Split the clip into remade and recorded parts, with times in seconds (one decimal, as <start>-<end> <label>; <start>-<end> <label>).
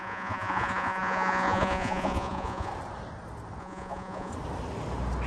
0.0-2.7 remade; 2.7-3.6 recorded; 3.6-4.3 remade; 4.3-5.3 recorded